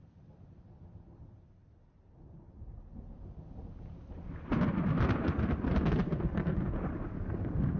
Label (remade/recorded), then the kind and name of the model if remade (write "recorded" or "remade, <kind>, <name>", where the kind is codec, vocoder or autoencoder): recorded